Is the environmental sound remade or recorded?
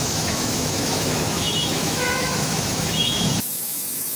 remade